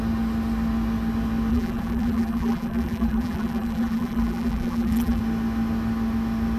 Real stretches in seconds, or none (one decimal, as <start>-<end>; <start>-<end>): 0.0-1.5; 5.2-6.6